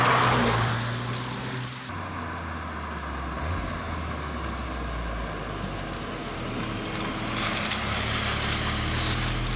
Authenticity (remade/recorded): recorded